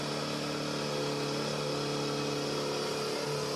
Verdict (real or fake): real